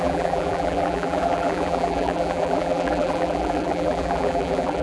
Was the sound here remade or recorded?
remade